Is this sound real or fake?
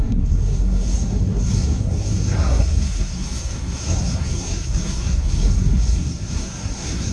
fake